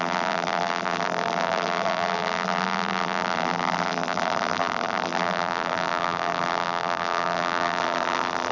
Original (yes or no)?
no